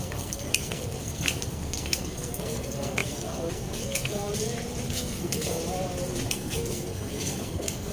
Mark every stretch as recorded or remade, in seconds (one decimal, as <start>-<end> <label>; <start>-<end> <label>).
0.0-4.3 remade; 4.3-4.9 recorded; 4.9-5.6 remade; 5.6-6.3 recorded; 6.3-7.9 remade